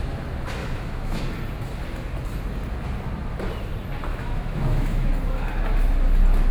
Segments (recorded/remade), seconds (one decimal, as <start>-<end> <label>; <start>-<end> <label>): 0.0-0.6 recorded; 0.6-1.2 remade; 1.2-4.1 recorded; 4.1-5.1 remade; 5.1-6.5 recorded